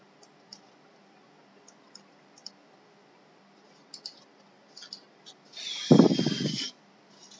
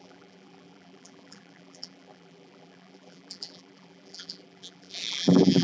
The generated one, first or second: second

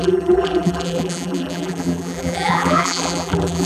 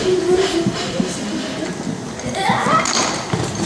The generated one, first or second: first